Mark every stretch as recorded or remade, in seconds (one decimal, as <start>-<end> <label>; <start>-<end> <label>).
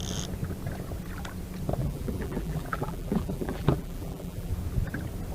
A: 0.0-1.8 recorded; 1.8-4.5 remade; 4.5-5.3 recorded